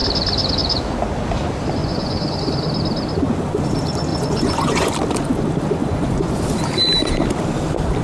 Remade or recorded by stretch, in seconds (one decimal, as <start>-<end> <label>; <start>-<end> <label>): 0.0-1.8 recorded; 1.8-2.4 remade; 2.4-4.1 recorded; 4.1-4.9 remade; 4.9-5.8 recorded; 5.8-6.4 remade; 6.4-8.0 recorded